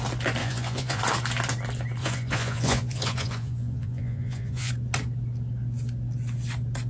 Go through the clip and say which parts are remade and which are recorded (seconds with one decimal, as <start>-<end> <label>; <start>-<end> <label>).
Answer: 0.0-0.4 recorded; 0.4-1.0 remade; 1.0-2.0 recorded; 2.0-4.7 remade; 4.7-6.9 recorded

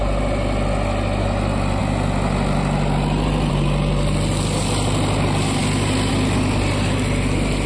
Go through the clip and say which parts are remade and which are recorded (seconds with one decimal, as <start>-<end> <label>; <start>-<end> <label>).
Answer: 0.0-7.7 recorded

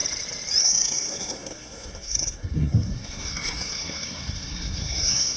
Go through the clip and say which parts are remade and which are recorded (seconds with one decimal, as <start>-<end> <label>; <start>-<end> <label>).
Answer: 0.0-0.6 recorded; 0.6-5.4 remade

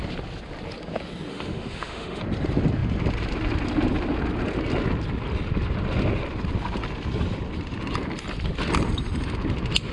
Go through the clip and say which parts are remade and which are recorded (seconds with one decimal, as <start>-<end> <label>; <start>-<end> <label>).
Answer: 0.0-1.3 recorded; 1.3-2.2 remade; 2.2-9.9 recorded

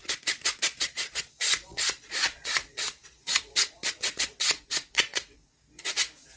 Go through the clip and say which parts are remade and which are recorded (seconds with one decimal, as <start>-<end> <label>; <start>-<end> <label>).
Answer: 0.0-5.5 remade; 5.5-6.4 recorded